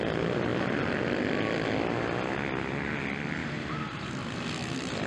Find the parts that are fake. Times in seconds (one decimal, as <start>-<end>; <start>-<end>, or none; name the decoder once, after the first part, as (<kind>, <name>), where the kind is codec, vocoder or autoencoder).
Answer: 3.4-4.1 (vocoder, BigVGAN v2)